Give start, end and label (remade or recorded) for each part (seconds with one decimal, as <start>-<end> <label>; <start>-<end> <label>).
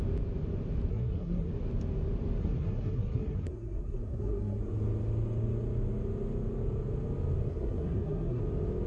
0.0-0.9 recorded; 0.9-1.5 remade; 1.5-2.4 recorded; 2.4-4.6 remade; 4.6-7.5 recorded; 7.5-8.4 remade; 8.4-8.9 recorded